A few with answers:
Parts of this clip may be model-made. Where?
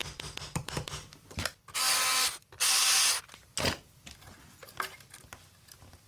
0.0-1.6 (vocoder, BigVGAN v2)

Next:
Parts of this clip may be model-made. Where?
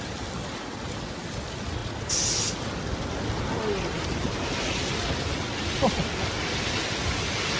none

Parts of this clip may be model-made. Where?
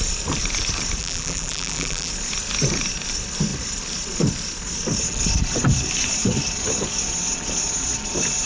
1.0-2.1 (vocoder, BigVGAN v2)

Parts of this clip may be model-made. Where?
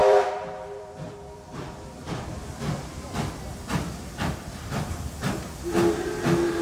0.0-4.0 (vocoder, BigVGAN v2)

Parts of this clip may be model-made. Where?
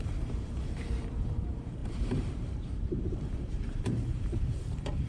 0.0-5.1 (vocoder, BigVGAN v2)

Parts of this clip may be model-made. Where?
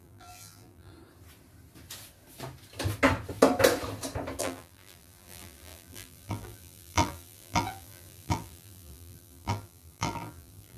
0.0-0.9 (vocoder, BigVGAN v2); 4.4-10.8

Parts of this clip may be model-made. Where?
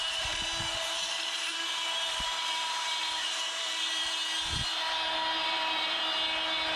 0.0-4.1 (vocoder, BigVGAN v2); 5.4-6.0